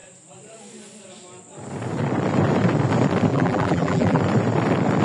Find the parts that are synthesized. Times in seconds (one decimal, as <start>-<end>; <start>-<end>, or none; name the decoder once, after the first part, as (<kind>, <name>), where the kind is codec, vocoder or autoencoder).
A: 3.3-4.2 (vocoder, BigVGAN v2)